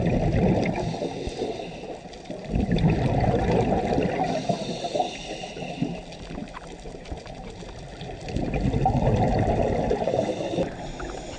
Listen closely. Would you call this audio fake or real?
fake